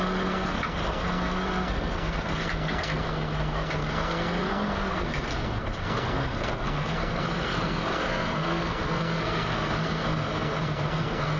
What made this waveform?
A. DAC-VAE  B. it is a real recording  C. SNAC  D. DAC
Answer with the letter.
C